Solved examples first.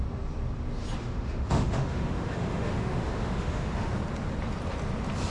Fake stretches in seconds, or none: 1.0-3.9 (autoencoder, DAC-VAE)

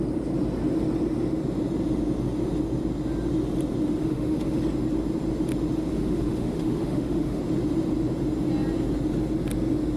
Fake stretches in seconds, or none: 4.0-4.6 (autoencoder, DAC-VAE); 5.9-7.4